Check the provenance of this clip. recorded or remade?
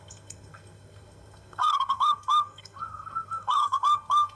remade